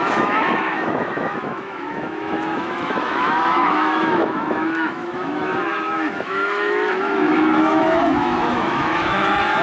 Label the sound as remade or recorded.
remade